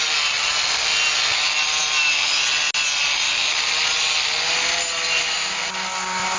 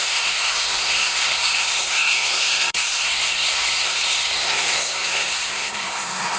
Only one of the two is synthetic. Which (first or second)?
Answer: second